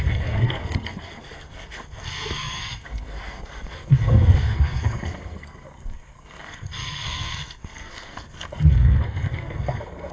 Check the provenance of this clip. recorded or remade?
remade